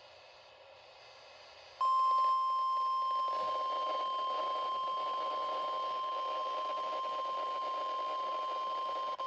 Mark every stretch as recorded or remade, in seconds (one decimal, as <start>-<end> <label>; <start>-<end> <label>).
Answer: 0.0-9.3 recorded

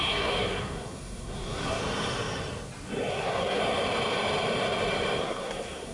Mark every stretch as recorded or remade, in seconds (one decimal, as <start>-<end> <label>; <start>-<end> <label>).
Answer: 0.0-1.8 remade; 1.8-3.1 recorded; 3.1-3.6 remade; 3.6-5.2 recorded; 5.2-5.9 remade

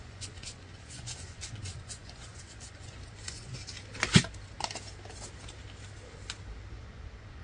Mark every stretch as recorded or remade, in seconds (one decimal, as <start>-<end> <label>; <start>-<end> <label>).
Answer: 0.0-3.6 remade; 3.6-6.7 recorded; 6.7-7.4 remade

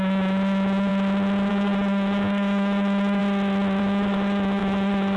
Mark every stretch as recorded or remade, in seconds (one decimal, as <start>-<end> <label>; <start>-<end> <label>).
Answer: 0.0-0.9 remade; 0.9-1.5 recorded; 1.5-3.2 remade; 3.2-3.8 recorded; 3.8-5.2 remade

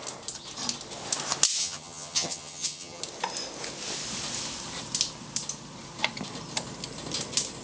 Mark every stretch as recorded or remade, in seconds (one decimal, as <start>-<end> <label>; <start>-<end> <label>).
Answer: 0.0-1.6 recorded; 1.6-3.0 remade; 3.0-7.6 recorded